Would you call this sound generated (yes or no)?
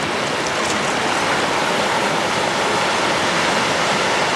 no